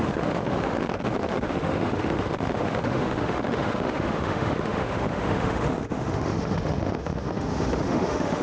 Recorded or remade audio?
remade